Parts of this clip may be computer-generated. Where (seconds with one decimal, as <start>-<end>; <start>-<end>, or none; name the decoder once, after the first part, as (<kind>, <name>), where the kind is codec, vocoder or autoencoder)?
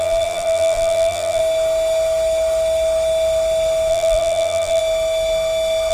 0.0-1.4 (vocoder, BigVGAN v2); 3.9-4.8